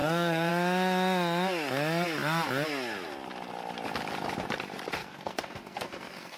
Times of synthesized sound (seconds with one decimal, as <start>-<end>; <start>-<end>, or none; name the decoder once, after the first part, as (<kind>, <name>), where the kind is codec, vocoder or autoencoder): 0.0-0.5 (codec, SNAC); 5.0-6.4